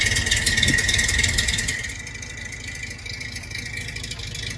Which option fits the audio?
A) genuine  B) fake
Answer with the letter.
A